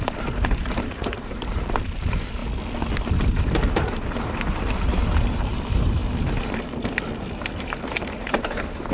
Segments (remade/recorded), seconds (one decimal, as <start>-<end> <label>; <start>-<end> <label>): 0.0-2.4 remade; 2.4-3.7 recorded; 3.7-6.0 remade; 6.0-7.4 recorded; 7.4-8.9 remade